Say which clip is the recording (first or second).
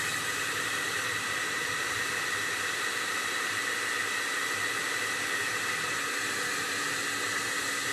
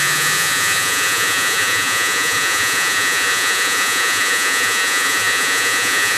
first